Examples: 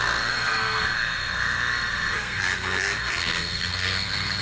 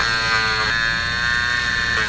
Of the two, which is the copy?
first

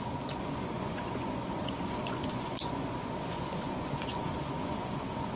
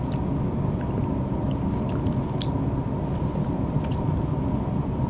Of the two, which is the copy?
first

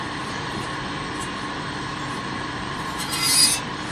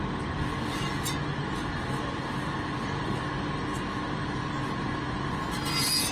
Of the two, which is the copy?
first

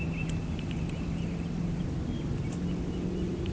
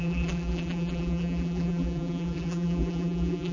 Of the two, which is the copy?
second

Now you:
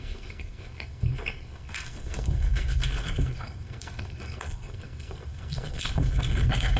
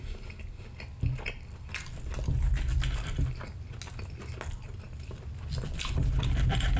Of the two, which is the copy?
first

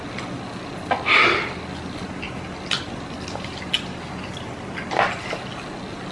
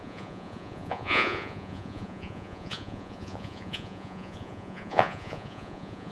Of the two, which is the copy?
second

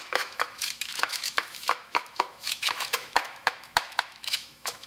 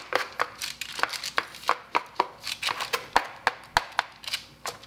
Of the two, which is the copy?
first